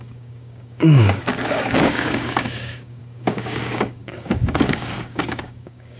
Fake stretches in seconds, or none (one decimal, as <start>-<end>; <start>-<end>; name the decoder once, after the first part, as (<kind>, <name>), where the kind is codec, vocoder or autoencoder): 0.0-6.0 (codec, DAC)